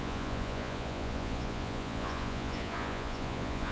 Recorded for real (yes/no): no